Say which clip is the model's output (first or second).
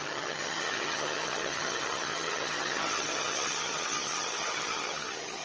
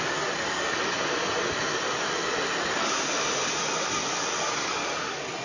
first